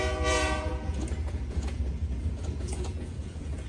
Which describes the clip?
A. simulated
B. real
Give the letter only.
A